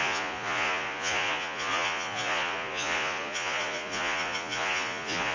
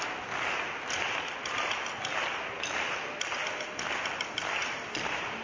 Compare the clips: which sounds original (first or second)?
second